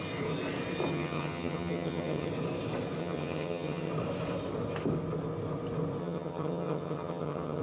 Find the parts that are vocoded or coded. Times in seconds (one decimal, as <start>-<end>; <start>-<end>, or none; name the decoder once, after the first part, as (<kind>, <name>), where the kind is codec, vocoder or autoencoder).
0.9-2.3 (vocoder, HiFi-GAN); 3.0-3.9; 6.0-7.6